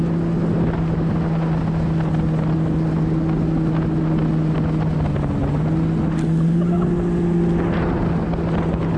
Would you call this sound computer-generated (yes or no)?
no